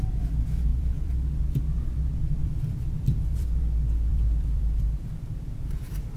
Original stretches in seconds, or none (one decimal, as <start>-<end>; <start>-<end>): 0.0-0.7; 1.6-2.4; 3.6-4.1